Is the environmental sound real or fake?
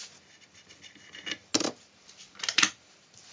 real